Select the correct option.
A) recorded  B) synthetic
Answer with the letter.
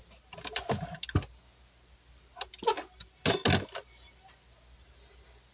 A